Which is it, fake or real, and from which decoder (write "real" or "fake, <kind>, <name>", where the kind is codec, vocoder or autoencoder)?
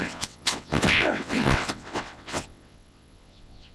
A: fake, vocoder, WaveNeXt